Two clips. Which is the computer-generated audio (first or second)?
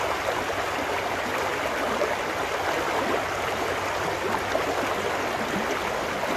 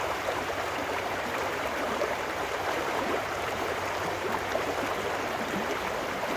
second